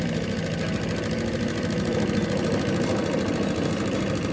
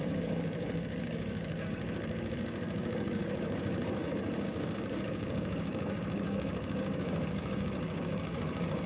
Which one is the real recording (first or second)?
first